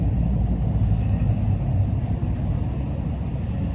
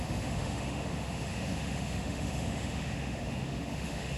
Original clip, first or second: first